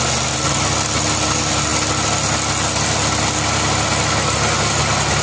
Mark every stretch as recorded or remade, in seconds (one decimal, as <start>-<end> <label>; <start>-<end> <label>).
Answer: 0.0-5.2 recorded